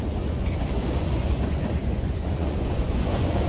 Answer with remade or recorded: remade